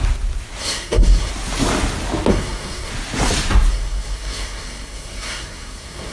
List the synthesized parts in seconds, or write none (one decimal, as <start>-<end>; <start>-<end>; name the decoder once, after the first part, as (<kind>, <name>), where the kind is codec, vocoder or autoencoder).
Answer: 0.6-1.3 (codec, SNAC); 2.3-2.9; 3.7-6.1